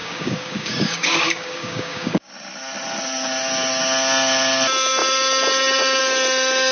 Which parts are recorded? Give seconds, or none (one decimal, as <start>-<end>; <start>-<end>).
2.3-6.7